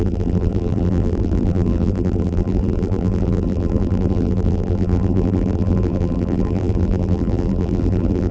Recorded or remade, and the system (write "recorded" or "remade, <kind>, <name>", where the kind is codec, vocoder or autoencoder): remade, vocoder, BigVGAN v2